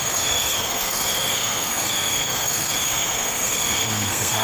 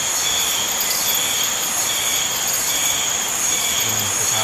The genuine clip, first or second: second